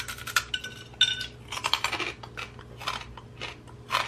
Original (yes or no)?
yes